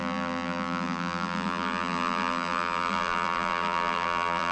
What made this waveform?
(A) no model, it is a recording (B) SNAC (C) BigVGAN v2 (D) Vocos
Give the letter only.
C